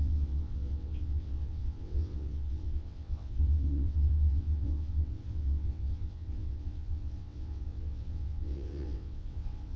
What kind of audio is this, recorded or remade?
remade